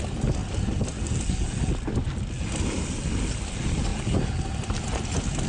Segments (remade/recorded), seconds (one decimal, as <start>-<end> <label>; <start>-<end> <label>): 0.0-5.5 recorded